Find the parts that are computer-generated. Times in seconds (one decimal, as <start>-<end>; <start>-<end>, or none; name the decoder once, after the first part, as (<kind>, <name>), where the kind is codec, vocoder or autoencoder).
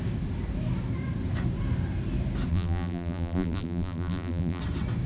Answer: 2.5-4.6 (vocoder, BigVGAN v2)